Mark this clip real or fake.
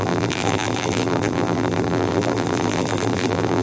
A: fake